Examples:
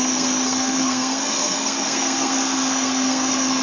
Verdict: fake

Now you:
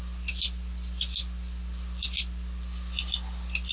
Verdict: real